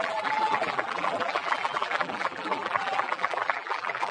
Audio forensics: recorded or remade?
remade